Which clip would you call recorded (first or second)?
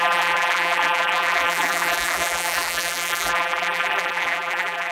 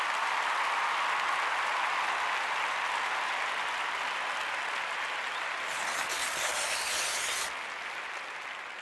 second